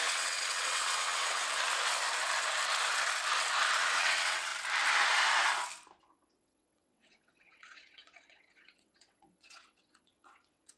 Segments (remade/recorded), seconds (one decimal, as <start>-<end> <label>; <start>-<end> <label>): 0.0-1.4 remade; 1.4-3.8 recorded; 3.8-4.5 remade; 4.5-6.0 recorded; 6.0-10.8 remade